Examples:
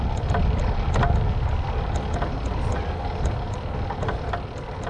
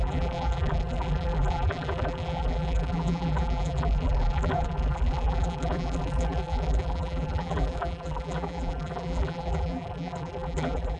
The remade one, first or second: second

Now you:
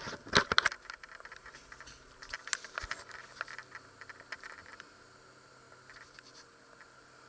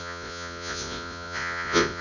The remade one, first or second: second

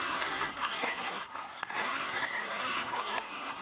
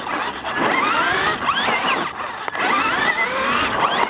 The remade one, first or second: first